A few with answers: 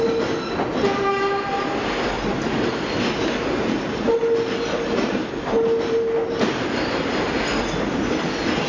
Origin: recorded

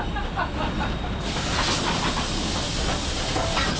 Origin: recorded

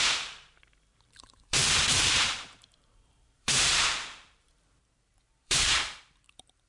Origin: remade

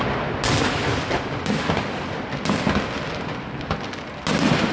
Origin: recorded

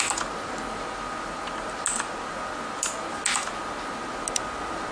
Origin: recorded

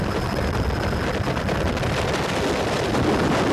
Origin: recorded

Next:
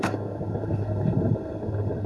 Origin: remade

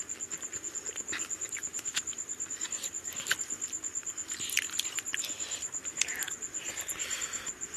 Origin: recorded